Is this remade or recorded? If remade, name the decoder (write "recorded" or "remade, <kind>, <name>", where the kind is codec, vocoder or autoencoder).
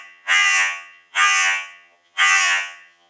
remade, vocoder, HiFi-GAN